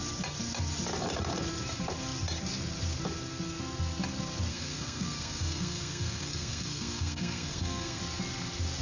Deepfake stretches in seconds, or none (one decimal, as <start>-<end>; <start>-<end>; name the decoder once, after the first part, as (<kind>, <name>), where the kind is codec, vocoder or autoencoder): 4.5-8.0 (codec, SNAC)